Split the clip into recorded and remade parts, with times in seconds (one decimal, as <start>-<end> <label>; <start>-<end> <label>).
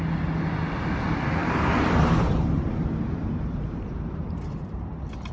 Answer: 0.0-1.4 recorded; 1.4-4.6 remade; 4.6-5.3 recorded